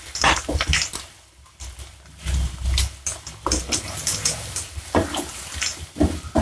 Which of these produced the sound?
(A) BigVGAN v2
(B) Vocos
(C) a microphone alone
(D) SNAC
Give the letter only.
C